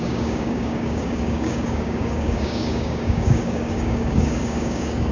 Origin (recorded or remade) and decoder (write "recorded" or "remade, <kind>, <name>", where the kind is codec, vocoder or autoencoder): remade, codec, DAC